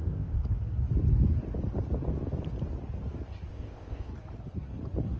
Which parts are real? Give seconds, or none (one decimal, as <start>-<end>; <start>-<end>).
0.4-3.5; 4.1-5.2